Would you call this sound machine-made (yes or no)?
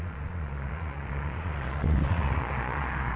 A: yes